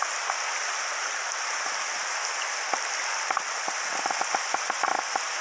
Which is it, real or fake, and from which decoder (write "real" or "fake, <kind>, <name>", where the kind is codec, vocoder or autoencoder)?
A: real